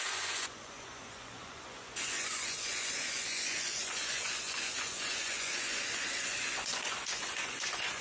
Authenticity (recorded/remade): remade